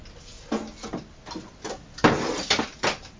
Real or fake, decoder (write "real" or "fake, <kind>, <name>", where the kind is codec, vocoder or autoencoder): real